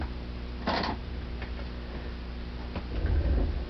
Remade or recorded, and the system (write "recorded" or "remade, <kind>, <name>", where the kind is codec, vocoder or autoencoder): recorded